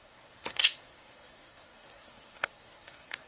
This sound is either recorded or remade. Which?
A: remade